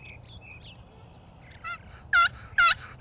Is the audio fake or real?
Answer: real